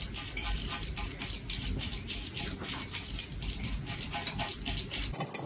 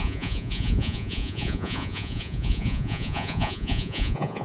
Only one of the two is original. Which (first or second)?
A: first